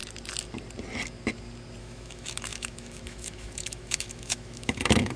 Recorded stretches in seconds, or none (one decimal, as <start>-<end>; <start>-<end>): 0.0-1.8